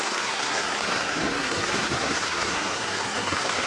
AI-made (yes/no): yes